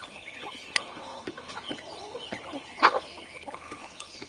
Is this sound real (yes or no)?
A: no